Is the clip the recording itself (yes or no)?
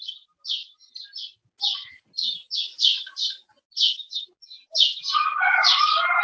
yes